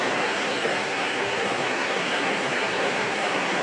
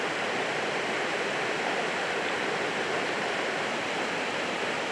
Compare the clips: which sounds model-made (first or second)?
first